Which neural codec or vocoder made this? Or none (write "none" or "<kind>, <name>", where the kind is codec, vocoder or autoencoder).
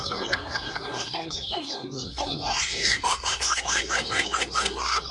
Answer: codec, SNAC